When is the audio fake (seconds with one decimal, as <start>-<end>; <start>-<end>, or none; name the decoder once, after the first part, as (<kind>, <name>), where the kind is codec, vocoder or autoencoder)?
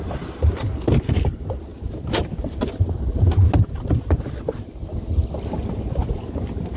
none